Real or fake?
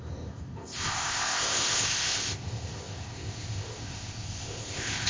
fake